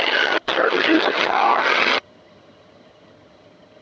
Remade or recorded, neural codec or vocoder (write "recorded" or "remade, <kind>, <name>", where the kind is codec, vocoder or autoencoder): remade, vocoder, HiFi-GAN